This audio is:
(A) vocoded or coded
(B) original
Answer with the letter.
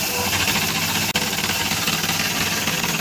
B